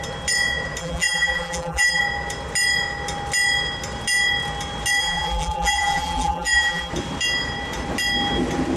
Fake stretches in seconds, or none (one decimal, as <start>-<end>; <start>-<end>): 0.8-2.0; 5.0-6.9